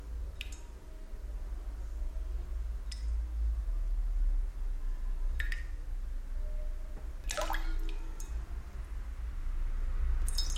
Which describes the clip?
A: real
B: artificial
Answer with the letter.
A